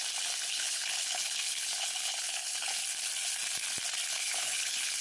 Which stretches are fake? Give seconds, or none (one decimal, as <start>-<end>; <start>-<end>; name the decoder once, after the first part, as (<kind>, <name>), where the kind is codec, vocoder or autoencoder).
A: 0.5-2.8 (codec, HILCodec); 4.1-5.0